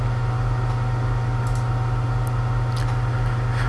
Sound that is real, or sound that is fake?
real